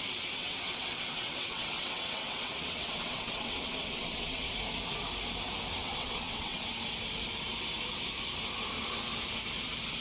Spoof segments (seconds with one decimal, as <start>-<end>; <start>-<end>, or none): 0.4-4.5; 5.8-6.6